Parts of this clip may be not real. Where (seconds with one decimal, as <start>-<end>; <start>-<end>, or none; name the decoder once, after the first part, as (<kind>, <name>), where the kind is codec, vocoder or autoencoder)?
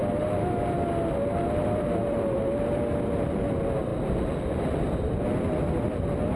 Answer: 0.0-2.6 (vocoder, BigVGAN v2); 3.9-4.6